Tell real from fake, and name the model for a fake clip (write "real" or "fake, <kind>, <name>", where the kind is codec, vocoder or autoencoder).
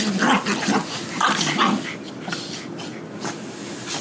real